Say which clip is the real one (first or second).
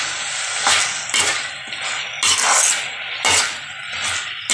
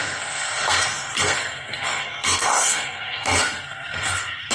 first